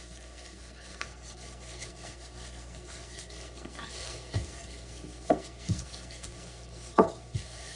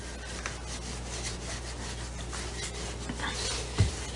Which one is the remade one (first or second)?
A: first